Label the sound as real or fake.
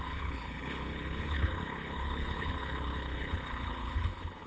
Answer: fake